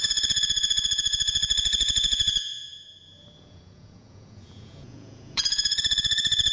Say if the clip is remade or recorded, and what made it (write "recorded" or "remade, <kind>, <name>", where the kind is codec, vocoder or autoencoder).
remade, vocoder, Vocos